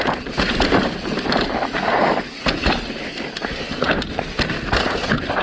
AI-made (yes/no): no